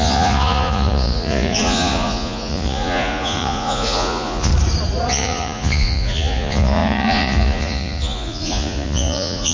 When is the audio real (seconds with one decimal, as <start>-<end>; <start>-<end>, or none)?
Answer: 4.5-5.1